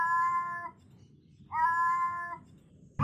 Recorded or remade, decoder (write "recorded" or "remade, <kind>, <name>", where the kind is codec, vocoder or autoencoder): recorded